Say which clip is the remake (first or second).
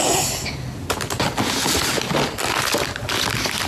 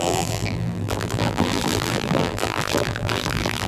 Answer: second